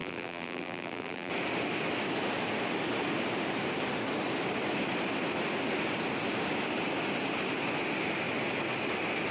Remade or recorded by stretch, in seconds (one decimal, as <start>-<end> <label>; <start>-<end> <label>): 0.0-1.3 remade; 1.3-9.3 recorded